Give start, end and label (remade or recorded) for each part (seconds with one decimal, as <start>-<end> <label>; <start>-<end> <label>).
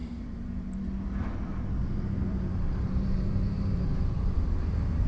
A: 0.0-0.8 remade; 0.8-1.8 recorded; 1.8-5.1 remade